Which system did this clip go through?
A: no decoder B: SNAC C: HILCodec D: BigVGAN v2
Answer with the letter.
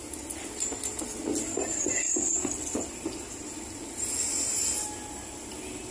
A